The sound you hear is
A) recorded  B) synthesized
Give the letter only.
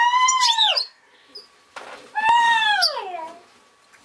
A